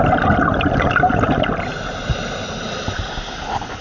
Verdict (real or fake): real